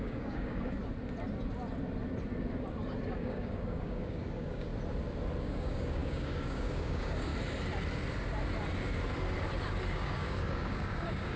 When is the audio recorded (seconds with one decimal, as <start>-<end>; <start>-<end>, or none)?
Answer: 0.8-3.2; 4.7-5.4; 7.3-9.9